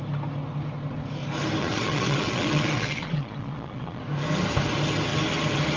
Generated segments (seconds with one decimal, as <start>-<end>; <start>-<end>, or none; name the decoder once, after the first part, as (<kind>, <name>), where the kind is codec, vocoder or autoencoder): 1.6-4.0 (vocoder, Vocos)